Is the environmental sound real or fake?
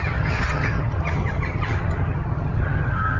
fake